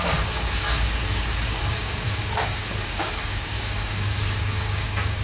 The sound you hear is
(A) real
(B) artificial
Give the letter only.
B